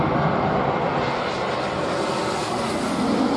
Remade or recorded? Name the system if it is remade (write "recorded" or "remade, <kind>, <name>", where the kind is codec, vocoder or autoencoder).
recorded